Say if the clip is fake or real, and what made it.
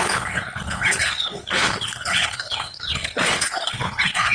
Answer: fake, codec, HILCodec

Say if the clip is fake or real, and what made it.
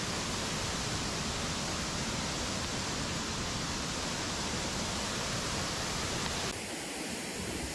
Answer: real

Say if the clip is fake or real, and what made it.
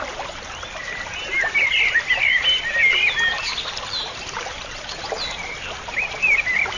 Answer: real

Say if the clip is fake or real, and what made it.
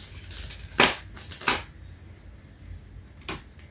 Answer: real